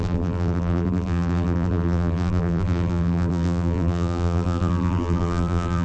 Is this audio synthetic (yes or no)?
yes